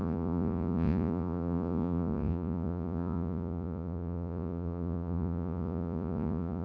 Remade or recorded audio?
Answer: remade